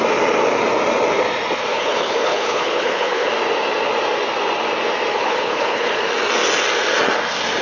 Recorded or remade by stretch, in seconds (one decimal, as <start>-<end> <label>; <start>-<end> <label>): 0.0-1.7 recorded; 1.7-3.3 remade; 3.3-5.1 recorded; 5.1-6.0 remade; 6.0-7.6 recorded